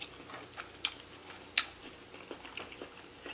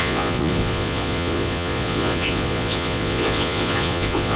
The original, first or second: first